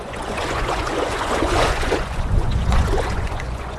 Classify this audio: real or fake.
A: fake